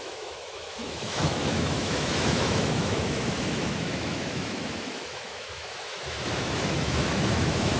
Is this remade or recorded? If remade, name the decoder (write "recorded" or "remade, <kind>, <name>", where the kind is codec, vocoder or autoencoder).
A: remade, autoencoder, DAC-VAE